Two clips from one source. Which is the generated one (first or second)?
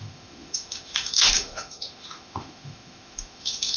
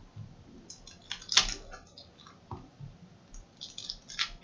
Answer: first